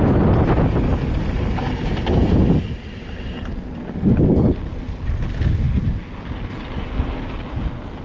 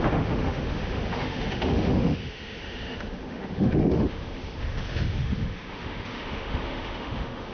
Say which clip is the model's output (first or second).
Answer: second